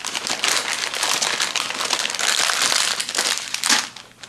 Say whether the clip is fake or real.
real